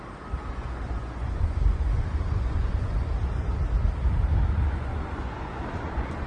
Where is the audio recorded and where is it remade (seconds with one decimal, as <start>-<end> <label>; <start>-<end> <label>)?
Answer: 0.0-0.4 recorded; 0.4-3.1 remade; 3.1-4.6 recorded; 4.6-6.3 remade